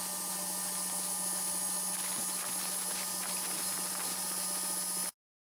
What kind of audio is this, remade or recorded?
recorded